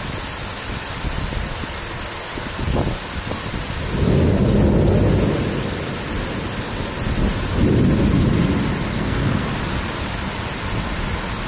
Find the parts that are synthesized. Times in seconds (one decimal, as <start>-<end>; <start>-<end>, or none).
8.9-9.5